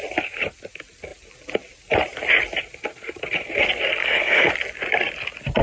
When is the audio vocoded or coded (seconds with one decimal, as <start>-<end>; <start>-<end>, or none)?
4.0-4.5